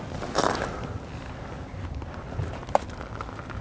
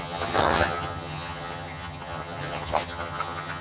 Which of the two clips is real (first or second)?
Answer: first